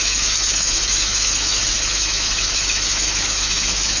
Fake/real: fake